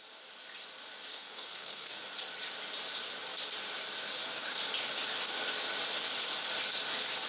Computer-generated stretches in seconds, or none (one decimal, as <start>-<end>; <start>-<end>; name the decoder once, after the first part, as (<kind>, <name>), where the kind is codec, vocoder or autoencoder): 1.1-2.0 (codec, SNAC)